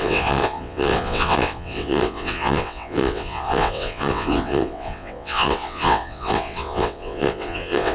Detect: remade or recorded remade